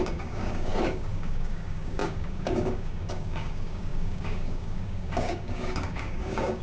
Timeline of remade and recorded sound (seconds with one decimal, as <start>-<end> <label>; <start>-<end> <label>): 0.0-6.6 remade